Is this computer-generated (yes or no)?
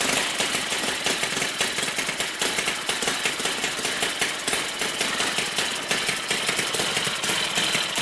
no